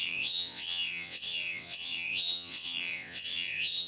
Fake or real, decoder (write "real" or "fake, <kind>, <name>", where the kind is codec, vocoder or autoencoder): fake, vocoder, WaveNeXt